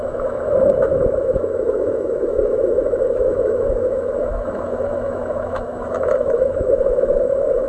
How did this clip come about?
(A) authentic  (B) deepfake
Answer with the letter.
B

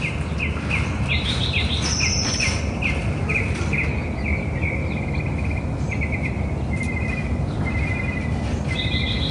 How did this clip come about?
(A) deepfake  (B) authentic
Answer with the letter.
B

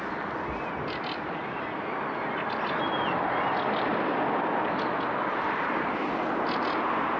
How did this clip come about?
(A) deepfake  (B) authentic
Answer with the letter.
B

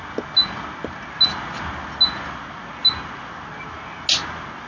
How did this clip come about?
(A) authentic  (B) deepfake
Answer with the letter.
A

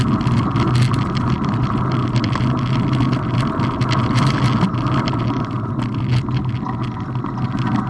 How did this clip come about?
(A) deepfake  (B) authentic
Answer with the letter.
B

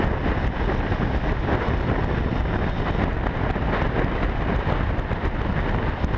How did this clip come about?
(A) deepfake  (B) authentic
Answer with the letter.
B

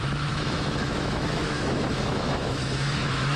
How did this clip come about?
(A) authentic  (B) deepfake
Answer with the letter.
B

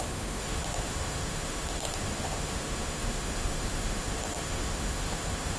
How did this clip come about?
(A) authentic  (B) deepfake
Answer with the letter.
B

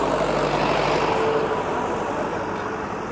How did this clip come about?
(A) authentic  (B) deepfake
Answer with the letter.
A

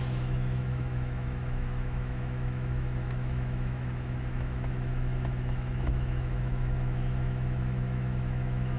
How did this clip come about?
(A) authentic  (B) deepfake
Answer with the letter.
B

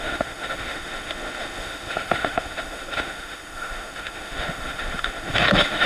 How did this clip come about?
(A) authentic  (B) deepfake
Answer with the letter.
B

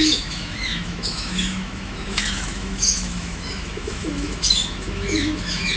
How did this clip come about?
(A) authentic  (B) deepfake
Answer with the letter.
B